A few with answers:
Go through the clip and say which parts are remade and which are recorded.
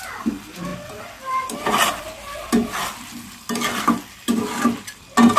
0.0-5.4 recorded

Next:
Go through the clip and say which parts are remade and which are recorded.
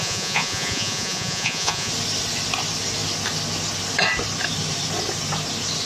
0.0-1.9 remade; 1.9-5.9 recorded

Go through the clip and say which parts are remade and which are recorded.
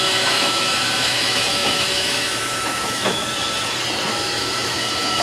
0.0-3.2 remade; 3.2-4.1 recorded; 4.1-5.2 remade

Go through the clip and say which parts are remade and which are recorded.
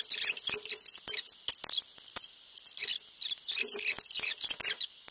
0.0-5.1 recorded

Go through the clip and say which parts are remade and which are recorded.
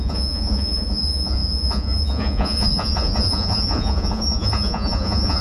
0.0-5.4 remade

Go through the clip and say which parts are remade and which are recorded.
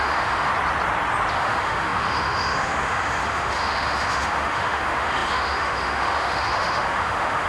0.0-0.5 remade; 0.5-1.3 recorded; 1.3-7.5 remade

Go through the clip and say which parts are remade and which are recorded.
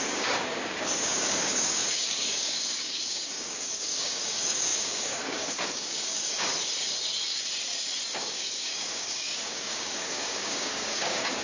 0.0-6.5 remade; 6.5-8.2 recorded; 8.2-11.4 remade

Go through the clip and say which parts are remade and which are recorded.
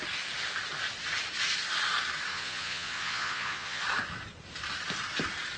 0.0-2.3 recorded; 2.3-3.8 remade; 3.8-5.6 recorded